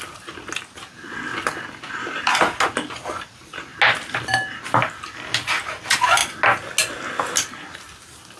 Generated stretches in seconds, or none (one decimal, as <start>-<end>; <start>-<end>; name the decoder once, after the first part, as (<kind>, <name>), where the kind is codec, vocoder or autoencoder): none